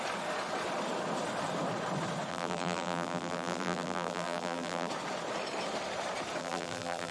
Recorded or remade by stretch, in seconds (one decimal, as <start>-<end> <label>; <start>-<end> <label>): 0.0-2.3 recorded; 2.3-4.9 remade; 4.9-6.4 recorded; 6.4-7.1 remade